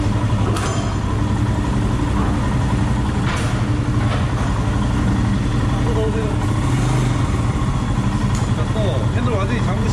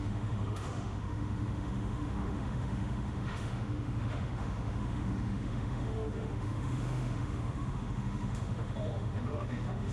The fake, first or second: second